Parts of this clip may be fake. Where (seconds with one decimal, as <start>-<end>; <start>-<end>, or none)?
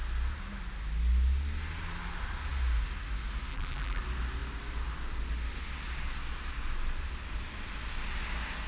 3.5-4.0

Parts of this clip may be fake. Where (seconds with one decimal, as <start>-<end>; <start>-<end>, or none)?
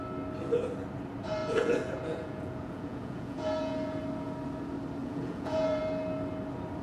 1.4-4.0; 5.0-5.8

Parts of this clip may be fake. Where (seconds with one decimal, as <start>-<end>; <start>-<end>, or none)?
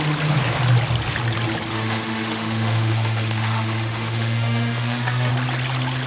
1.7-5.3